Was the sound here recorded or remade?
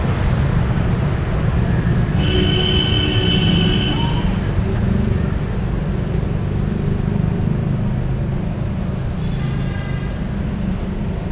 recorded